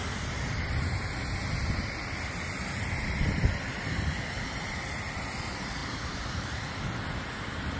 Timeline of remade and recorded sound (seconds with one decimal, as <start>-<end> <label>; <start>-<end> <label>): 0.0-1.4 recorded; 1.4-2.0 remade; 2.0-5.8 recorded; 5.8-6.7 remade; 6.7-7.8 recorded